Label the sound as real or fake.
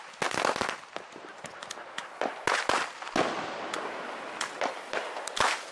real